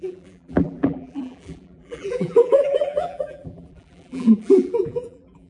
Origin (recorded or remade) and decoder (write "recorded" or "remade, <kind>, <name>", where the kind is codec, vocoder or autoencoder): remade, vocoder, BigVGAN v2